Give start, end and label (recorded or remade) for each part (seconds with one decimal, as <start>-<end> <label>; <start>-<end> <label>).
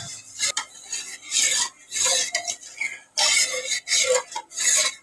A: 0.0-5.0 recorded